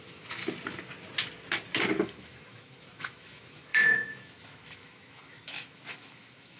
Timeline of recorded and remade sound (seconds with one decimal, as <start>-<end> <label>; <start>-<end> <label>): 0.0-0.4 remade; 0.4-2.0 recorded; 2.0-6.6 remade